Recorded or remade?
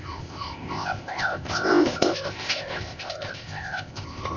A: remade